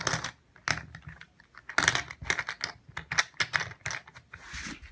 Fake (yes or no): no